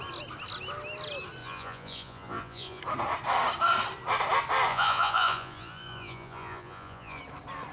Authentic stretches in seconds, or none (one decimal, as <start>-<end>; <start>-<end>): 0.0-1.4; 2.8-4.7; 7.2-7.7